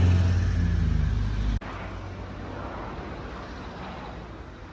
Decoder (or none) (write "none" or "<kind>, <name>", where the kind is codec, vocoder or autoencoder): none